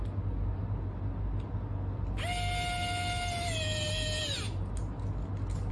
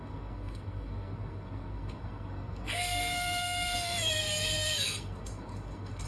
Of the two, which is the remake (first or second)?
second